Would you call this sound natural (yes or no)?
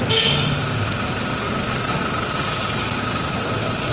yes